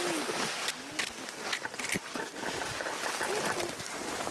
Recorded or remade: recorded